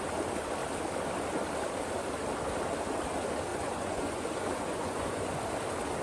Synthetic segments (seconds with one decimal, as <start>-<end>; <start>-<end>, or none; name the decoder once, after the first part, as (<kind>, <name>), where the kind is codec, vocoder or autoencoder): 3.5-5.4 (vocoder, Vocos)